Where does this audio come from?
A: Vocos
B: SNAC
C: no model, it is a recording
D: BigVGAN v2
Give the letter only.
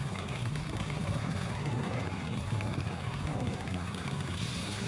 B